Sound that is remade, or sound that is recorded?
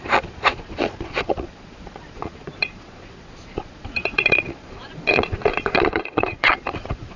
remade